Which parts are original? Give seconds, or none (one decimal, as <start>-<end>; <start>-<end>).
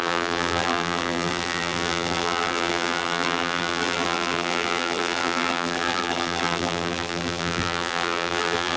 none